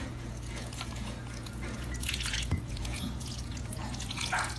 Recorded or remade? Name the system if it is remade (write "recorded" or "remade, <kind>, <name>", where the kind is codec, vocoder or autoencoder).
remade, vocoder, Vocos